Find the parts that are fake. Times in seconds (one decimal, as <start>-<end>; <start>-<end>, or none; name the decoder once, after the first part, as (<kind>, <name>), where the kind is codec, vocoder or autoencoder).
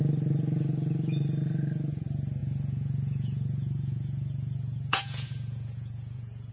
2.4-6.5 (vocoder, Vocos)